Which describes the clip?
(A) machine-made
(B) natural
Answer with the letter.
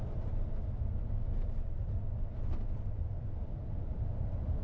B